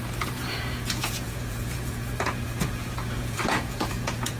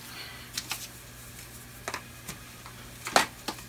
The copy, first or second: first